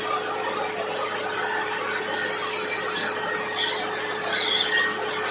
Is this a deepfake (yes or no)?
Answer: no